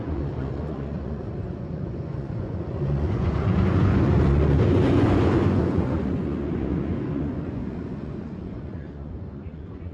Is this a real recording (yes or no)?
no